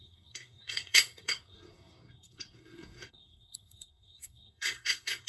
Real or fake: fake